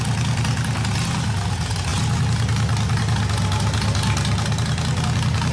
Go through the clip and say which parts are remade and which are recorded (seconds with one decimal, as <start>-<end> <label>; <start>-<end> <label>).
0.0-5.5 recorded